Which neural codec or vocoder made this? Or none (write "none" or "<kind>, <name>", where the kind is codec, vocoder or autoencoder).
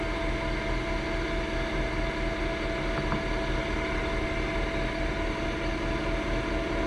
none